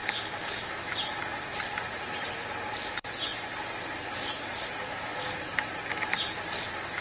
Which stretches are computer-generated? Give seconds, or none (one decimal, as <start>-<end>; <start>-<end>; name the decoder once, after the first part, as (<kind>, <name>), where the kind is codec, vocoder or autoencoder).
0.0-0.7 (codec, DAC)